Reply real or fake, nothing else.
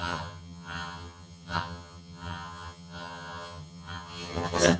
fake